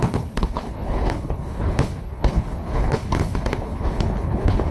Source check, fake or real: fake